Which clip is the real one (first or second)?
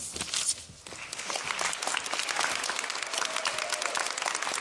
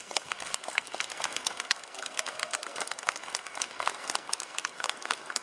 first